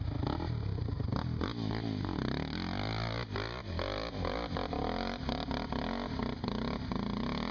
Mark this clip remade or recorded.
recorded